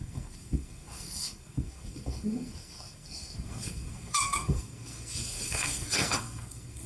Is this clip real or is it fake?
fake